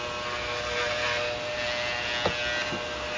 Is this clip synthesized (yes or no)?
no